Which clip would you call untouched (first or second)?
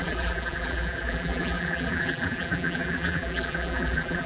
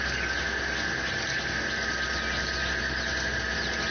second